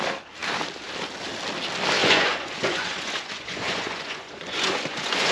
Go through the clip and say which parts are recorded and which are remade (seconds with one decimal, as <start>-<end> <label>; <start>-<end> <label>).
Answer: 0.0-2.0 recorded; 2.0-5.3 remade